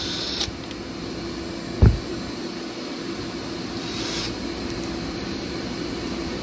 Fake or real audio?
real